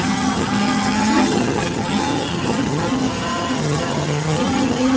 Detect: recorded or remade remade